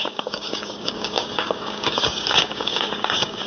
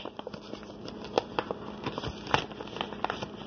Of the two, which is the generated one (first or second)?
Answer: first